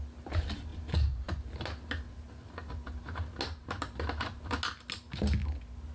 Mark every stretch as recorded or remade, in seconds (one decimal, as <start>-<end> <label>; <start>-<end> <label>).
0.0-5.9 recorded